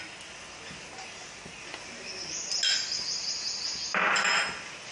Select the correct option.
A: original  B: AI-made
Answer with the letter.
A